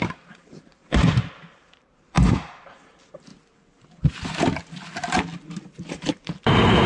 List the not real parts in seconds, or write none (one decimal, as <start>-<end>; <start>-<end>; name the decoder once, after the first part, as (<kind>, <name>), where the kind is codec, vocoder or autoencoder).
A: 0.0-3.3 (vocoder, BigVGAN v2); 5.6-6.9